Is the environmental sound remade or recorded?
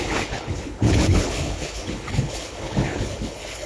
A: remade